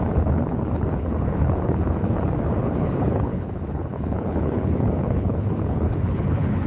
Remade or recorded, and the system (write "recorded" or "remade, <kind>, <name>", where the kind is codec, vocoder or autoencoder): remade, codec, HILCodec